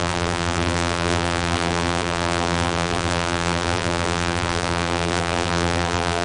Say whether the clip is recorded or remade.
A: remade